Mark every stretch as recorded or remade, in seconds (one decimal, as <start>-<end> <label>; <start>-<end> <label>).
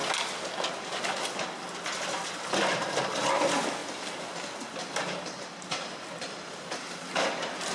0.0-0.7 recorded; 0.7-3.8 remade; 3.8-4.7 recorded; 4.7-7.7 remade